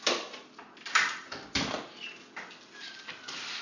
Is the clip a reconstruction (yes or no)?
no